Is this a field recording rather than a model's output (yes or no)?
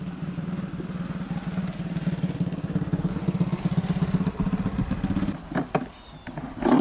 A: yes